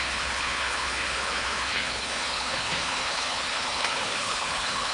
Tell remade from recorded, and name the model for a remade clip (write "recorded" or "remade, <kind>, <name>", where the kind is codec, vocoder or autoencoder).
remade, codec, HILCodec